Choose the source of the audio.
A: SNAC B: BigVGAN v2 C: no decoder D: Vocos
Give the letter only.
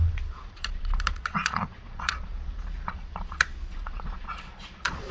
D